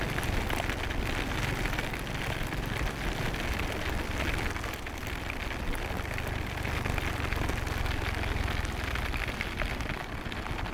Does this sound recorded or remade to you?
recorded